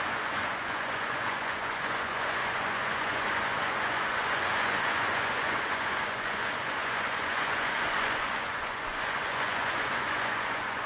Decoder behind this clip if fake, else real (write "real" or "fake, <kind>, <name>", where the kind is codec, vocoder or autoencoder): fake, vocoder, Vocos